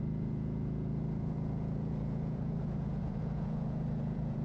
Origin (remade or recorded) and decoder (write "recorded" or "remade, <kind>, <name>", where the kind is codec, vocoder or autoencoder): remade, vocoder, Vocos